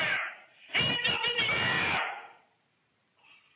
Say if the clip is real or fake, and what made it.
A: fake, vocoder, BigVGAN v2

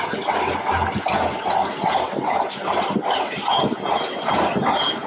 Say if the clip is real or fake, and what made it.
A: real